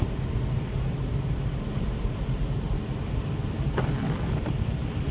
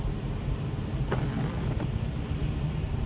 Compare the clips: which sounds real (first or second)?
second